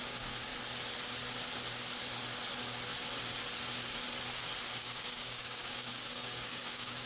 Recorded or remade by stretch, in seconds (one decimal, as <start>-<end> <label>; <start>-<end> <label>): 0.0-0.5 remade; 0.5-4.8 recorded; 4.8-7.1 remade